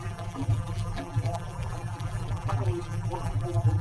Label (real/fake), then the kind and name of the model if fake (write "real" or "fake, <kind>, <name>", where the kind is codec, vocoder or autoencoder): fake, vocoder, BigVGAN v2